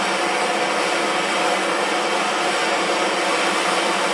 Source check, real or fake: real